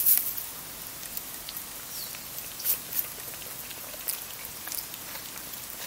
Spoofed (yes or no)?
no